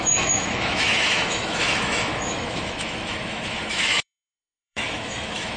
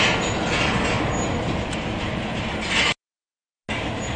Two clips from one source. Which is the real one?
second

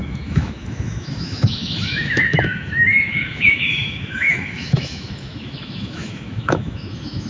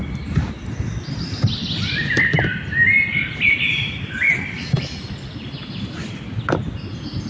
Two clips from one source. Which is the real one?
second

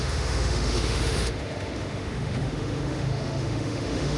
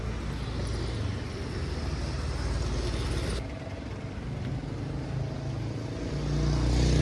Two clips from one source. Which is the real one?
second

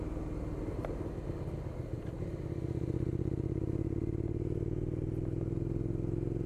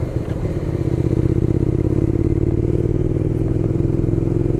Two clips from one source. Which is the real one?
first